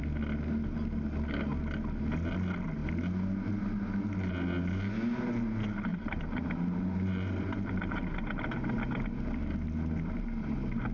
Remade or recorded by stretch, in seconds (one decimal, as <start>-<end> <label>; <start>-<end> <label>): 0.0-5.9 recorded; 5.9-7.7 remade; 7.7-10.9 recorded